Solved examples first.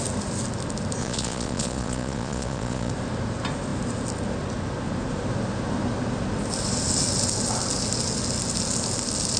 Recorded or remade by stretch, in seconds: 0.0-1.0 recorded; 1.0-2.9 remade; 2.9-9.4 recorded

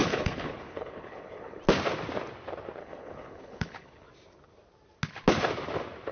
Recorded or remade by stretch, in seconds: 0.0-1.6 remade; 1.6-2.8 recorded; 2.8-4.1 remade; 4.1-6.1 recorded

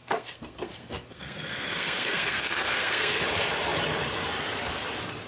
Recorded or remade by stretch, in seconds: 0.0-3.2 remade; 3.2-5.3 recorded

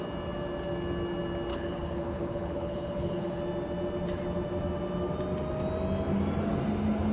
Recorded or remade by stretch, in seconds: 0.0-1.5 recorded; 1.5-3.4 remade; 3.4-7.1 recorded